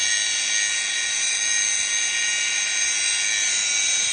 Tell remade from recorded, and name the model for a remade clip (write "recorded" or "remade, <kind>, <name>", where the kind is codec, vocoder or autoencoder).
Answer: recorded